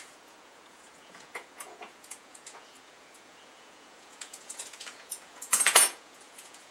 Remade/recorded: remade